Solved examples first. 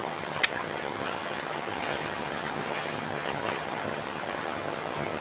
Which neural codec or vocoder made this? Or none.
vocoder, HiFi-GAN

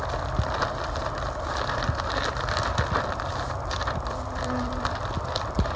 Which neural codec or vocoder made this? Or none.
none